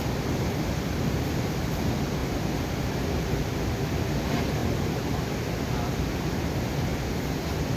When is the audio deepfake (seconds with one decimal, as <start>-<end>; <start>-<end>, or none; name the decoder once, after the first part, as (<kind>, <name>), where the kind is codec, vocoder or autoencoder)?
none